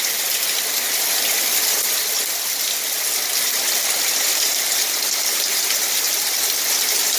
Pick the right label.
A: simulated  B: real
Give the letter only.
B